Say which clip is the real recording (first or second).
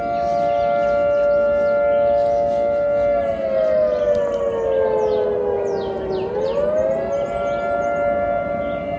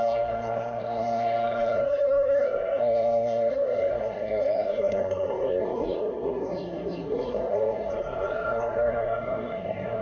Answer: first